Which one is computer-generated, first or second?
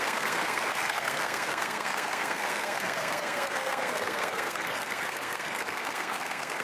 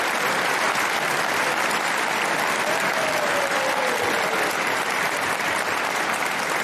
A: first